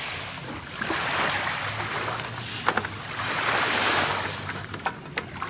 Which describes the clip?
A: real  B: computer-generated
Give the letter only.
A